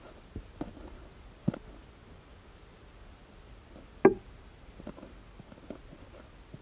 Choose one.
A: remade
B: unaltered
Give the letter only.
B